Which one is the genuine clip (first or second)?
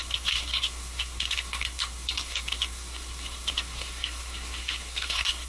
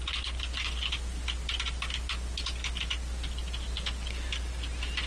second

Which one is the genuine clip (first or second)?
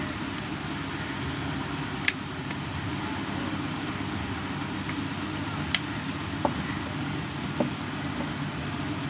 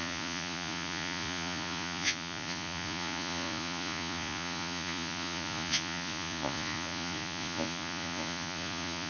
first